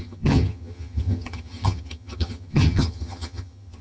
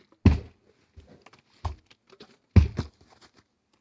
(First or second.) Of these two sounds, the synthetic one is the first